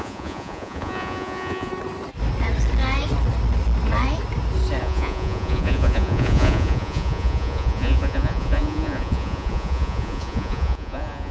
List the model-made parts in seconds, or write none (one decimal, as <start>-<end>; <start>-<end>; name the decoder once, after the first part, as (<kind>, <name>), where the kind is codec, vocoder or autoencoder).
0.0-1.7 (vocoder, Vocos); 4.8-11.3